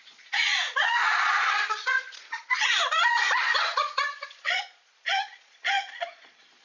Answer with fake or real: fake